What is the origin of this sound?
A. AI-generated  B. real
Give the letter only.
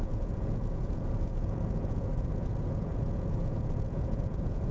A